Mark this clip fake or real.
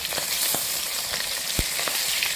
fake